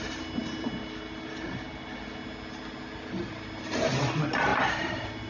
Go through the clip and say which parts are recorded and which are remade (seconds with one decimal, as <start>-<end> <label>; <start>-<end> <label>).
0.0-5.3 recorded